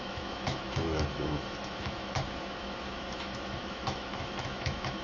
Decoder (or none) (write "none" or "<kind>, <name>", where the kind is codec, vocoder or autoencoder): autoencoder, DAC-VAE